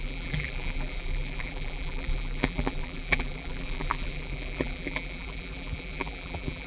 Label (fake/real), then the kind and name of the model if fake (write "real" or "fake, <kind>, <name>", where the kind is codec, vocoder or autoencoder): fake, vocoder, BigVGAN v2